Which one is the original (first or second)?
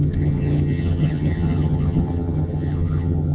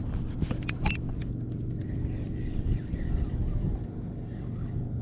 second